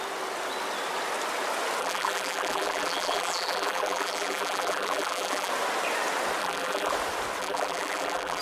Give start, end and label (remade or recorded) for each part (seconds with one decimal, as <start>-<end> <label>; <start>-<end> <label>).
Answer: 0.0-1.8 recorded; 1.8-5.5 remade; 5.5-6.4 recorded; 6.4-6.9 remade; 6.9-7.4 recorded; 7.4-8.4 remade